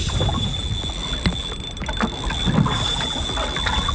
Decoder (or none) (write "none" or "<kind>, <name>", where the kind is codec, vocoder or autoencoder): none